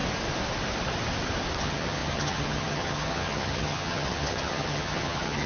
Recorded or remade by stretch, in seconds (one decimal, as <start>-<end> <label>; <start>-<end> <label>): 0.0-1.6 recorded; 1.6-5.5 remade